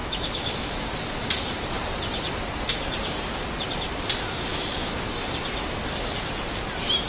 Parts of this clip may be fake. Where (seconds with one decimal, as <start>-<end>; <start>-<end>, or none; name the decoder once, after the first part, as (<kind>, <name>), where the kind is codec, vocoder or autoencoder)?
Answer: 0.0-0.9 (autoencoder, DAC-VAE); 4.5-5.1